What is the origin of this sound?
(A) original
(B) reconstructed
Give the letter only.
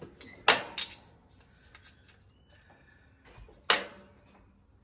A